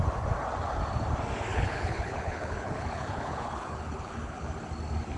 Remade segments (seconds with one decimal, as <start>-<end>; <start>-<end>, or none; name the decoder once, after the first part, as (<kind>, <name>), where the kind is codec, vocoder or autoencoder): 1.5-4.5 (codec, HILCodec)

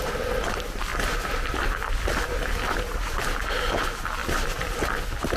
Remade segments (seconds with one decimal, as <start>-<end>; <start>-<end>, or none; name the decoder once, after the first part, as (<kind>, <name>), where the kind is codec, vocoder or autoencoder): none